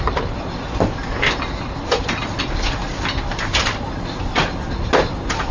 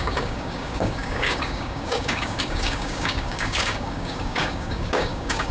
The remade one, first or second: second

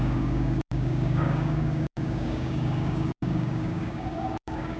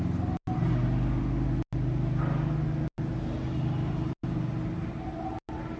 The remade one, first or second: first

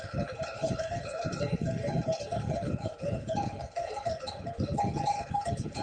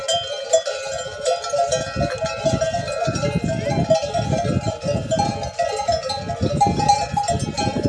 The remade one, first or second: first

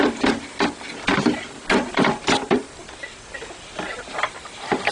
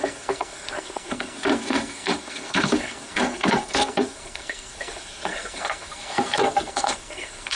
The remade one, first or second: second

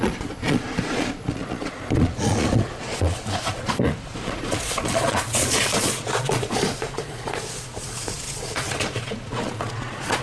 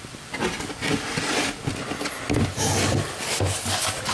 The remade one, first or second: first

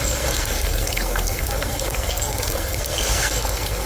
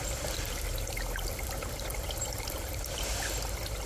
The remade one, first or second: first